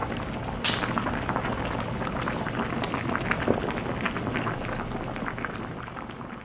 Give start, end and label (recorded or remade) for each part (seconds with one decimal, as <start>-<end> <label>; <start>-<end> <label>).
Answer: 0.0-6.4 recorded